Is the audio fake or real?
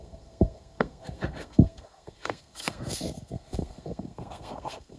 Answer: fake